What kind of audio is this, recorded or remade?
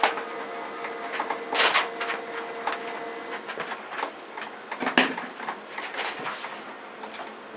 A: recorded